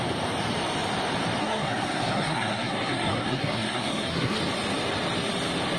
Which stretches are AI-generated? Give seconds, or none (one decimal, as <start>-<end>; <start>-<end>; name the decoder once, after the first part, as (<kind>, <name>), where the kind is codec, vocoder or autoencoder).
1.4-4.4 (codec, SNAC)